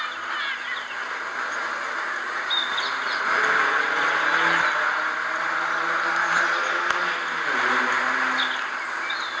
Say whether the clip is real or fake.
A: real